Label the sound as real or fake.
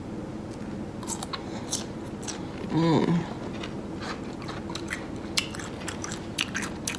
real